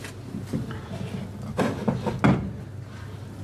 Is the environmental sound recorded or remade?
recorded